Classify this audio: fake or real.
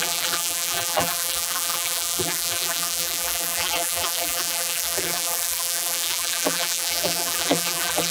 fake